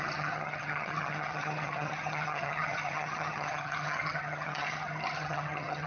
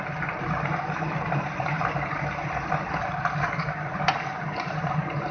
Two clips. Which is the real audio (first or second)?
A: second